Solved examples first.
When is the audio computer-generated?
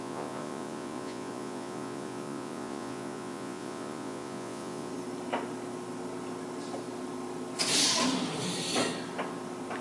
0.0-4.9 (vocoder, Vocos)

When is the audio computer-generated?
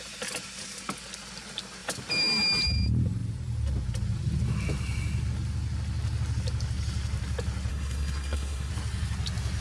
7.7-8.7 (codec, SNAC)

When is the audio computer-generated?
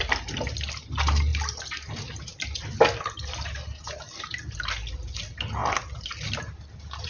none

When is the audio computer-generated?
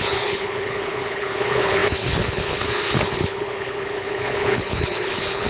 0.0-5.5 (codec, HILCodec)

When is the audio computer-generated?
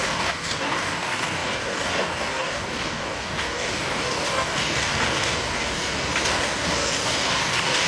0.0-7.9 (codec, DAC)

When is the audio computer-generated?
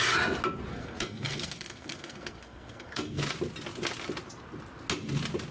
0.7-3.2 (codec, SNAC)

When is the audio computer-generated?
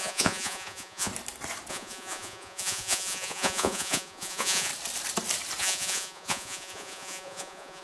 0.0-1.1 (vocoder, Vocos); 1.7-4.7; 5.6-7.8